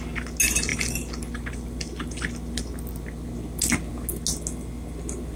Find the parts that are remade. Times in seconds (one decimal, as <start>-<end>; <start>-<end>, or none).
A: none